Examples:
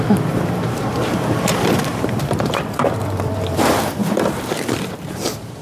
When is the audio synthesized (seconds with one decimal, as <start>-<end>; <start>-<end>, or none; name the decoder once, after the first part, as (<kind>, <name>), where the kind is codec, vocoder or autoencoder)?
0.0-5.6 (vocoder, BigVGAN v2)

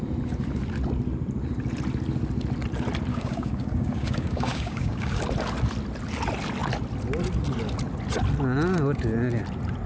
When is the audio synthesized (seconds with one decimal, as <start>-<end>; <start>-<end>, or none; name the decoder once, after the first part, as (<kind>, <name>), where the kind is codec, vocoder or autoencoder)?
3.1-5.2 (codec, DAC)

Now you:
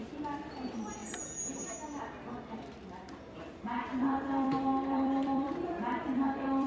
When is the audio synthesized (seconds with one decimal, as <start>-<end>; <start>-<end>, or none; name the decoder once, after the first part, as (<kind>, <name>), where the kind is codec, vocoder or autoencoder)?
0.0-1.0 (vocoder, BigVGAN v2); 3.3-6.7